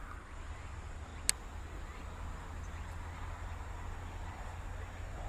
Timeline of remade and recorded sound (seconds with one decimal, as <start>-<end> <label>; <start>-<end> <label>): 0.0-5.3 recorded